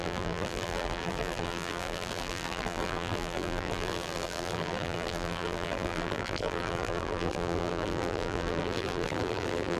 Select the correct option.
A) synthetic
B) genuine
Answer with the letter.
A